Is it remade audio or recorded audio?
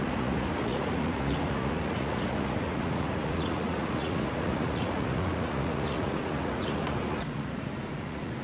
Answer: remade